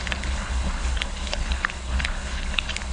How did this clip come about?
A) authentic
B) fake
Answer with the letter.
B